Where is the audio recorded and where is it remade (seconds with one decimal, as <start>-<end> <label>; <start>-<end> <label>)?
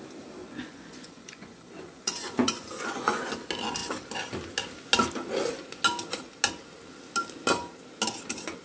0.0-0.4 recorded; 0.4-3.3 remade; 3.3-8.6 recorded